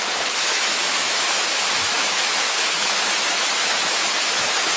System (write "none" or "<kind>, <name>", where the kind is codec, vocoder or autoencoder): autoencoder, DAC-VAE